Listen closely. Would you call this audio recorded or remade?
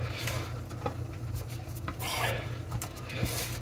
recorded